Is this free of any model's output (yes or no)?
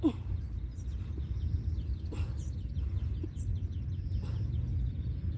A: yes